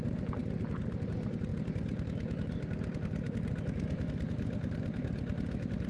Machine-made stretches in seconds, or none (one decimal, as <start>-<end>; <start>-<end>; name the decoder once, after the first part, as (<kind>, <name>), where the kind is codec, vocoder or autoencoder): 1.5-4.1 (vocoder, BigVGAN v2)